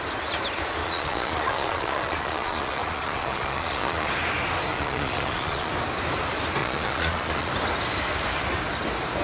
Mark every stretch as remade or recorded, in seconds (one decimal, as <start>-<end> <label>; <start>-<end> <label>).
0.0-0.8 recorded; 0.8-4.1 remade; 4.1-4.7 recorded; 4.7-5.7 remade; 5.7-6.6 recorded; 6.6-7.5 remade; 7.5-9.2 recorded

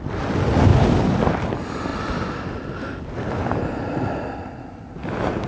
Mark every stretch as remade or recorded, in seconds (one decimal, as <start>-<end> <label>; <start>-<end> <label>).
0.0-5.5 recorded

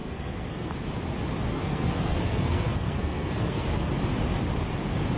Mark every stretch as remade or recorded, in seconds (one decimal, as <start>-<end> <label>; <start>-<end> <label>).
0.0-0.7 remade; 0.7-1.5 recorded; 1.5-3.9 remade; 3.9-5.2 recorded

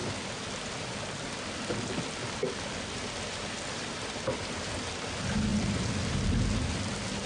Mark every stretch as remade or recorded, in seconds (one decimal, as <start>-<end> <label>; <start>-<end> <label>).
0.0-1.9 remade; 1.9-2.4 recorded; 2.4-4.7 remade; 4.7-5.5 recorded; 5.5-6.1 remade; 6.1-7.3 recorded

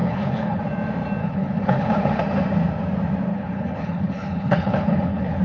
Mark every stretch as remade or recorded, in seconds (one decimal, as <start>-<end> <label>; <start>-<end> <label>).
0.0-0.6 remade; 0.6-1.2 recorded; 1.2-2.2 remade; 2.2-3.3 recorded; 3.3-5.4 remade

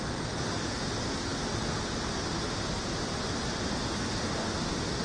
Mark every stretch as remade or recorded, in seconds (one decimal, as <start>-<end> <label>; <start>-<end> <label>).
0.0-5.0 recorded

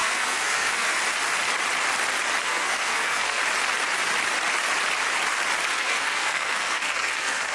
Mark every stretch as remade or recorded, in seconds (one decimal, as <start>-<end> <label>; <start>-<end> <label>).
0.0-1.0 remade; 1.0-2.4 recorded; 2.4-3.4 remade; 3.4-5.7 recorded; 5.7-7.5 remade

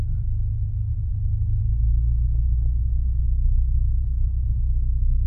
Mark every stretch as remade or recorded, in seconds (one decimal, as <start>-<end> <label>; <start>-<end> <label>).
0.0-5.3 recorded